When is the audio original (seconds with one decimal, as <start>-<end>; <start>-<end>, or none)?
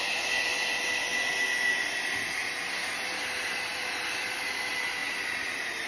0.0-5.9